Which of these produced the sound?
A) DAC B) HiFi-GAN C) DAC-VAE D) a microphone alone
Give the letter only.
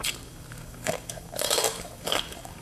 A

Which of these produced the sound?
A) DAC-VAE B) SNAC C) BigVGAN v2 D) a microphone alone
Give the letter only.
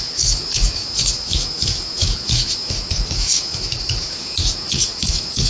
A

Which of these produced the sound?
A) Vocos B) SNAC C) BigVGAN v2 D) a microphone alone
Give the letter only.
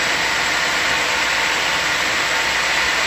D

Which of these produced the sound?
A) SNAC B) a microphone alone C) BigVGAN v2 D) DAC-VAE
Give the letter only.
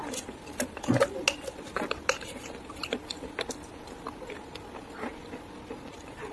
B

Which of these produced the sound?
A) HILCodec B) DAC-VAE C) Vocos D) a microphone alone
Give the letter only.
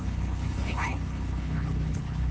A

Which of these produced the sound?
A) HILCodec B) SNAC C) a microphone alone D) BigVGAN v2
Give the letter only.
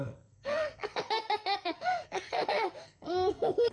B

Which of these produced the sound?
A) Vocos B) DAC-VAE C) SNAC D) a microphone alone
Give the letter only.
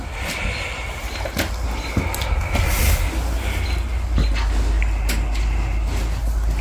D